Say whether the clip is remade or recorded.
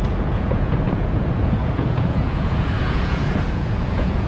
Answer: remade